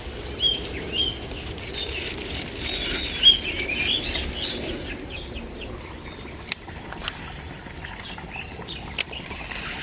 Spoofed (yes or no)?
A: no